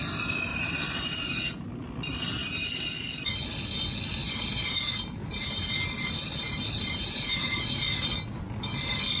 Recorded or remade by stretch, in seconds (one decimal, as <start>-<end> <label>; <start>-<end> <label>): 0.0-0.5 recorded; 0.5-1.7 remade; 1.7-4.2 recorded; 4.2-7.8 remade; 7.8-9.2 recorded